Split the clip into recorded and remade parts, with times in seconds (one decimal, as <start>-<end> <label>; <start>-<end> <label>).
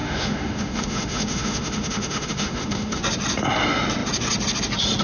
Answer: 0.0-3.0 remade; 3.0-5.0 recorded